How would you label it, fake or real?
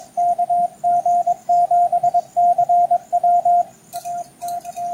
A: real